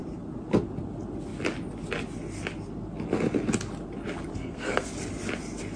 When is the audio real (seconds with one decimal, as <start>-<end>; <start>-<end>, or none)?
0.0-4.3; 4.9-5.8